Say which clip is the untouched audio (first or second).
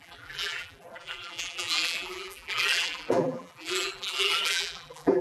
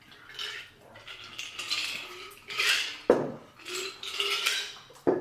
second